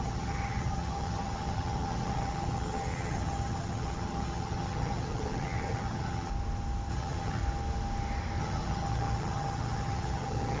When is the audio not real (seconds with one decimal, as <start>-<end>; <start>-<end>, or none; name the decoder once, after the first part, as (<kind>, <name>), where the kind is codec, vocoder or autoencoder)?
0.0-6.3 (vocoder, HiFi-GAN); 6.9-7.4; 8.4-10.6